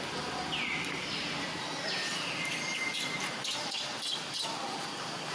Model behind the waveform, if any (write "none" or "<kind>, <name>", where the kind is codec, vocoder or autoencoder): none